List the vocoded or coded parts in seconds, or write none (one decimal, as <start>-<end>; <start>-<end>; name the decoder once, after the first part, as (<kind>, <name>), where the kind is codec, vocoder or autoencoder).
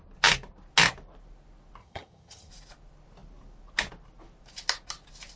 1.8-2.5 (vocoder, HiFi-GAN)